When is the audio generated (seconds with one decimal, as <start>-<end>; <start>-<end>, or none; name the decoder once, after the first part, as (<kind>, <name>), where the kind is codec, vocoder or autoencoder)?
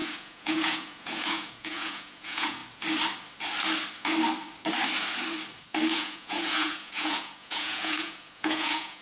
0.0-2.6 (vocoder, Vocos); 5.9-9.0